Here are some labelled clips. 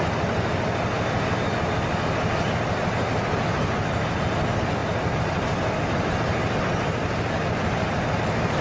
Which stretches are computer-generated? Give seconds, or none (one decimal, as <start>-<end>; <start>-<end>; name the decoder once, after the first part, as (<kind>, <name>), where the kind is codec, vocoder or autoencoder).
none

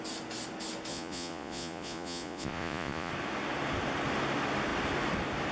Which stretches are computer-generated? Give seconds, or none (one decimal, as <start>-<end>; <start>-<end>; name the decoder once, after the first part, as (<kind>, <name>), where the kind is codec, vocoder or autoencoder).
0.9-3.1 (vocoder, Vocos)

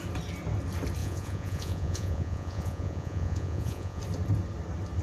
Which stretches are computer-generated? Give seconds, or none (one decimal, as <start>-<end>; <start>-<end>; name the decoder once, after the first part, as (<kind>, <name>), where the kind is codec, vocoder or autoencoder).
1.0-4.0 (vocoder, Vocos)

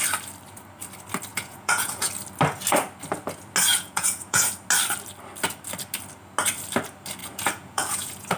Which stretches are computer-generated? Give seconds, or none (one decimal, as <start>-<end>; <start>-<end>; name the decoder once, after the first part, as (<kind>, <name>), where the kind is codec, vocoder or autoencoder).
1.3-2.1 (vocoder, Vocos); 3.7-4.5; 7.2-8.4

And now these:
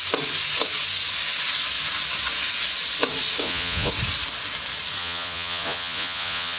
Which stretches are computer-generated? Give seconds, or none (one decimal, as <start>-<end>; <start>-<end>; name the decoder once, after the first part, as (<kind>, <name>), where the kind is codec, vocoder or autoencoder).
3.4-3.9 (vocoder, Vocos); 5.0-6.6